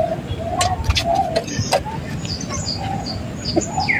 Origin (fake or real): real